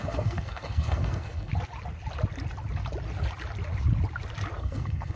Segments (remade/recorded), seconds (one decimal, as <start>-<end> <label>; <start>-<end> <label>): 0.0-1.5 remade; 1.5-4.6 recorded; 4.6-5.2 remade